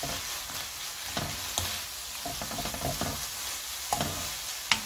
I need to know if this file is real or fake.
real